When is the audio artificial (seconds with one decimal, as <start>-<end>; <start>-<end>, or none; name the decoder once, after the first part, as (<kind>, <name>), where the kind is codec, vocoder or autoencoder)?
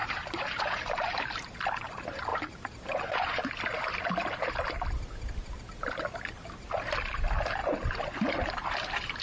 0.0-1.6 (vocoder, BigVGAN v2); 2.3-3.6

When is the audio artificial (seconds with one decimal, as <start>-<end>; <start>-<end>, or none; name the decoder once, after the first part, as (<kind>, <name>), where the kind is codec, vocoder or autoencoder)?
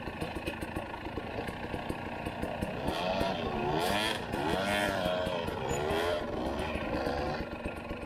4.8-6.2 (vocoder, BigVGAN v2)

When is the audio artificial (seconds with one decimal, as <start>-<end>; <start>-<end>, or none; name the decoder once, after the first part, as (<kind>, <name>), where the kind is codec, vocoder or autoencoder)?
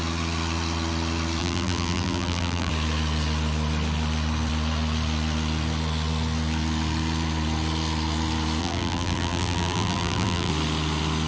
1.4-2.7 (vocoder, BigVGAN v2); 8.6-10.5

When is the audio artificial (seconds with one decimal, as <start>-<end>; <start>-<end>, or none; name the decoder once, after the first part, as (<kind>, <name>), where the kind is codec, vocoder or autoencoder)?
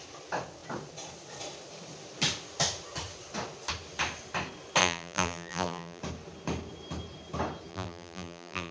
4.8-6.0 (vocoder, BigVGAN v2); 7.7-8.7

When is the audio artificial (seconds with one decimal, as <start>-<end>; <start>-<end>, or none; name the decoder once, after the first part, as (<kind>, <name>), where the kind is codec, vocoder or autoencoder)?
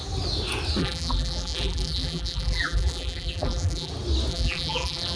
0.8-3.9 (vocoder, BigVGAN v2); 4.3-5.2